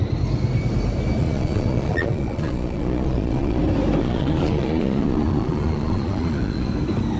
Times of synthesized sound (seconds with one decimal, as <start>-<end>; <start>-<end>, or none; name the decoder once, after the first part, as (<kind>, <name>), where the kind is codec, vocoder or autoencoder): 1.2-3.6 (vocoder, Vocos); 4.0-6.7